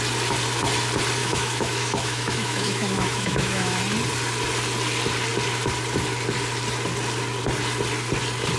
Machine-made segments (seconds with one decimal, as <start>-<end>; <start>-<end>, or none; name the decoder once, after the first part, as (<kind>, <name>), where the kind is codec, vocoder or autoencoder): 1.2-3.8 (autoencoder, DAC-VAE)